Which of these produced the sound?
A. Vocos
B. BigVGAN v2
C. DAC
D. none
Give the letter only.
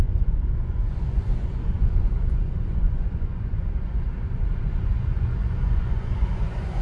A